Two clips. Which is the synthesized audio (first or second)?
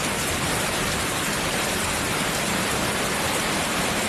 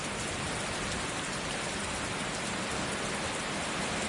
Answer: first